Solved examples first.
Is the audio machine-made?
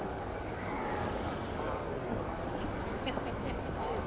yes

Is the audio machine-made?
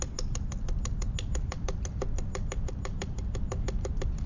no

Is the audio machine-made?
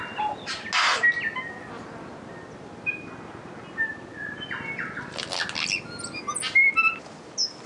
no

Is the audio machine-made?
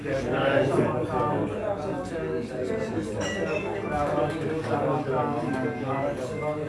yes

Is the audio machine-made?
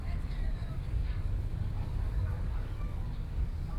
yes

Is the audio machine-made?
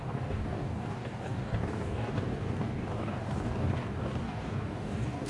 yes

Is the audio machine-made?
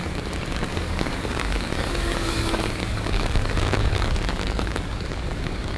yes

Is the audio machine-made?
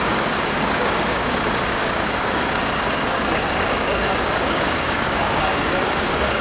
yes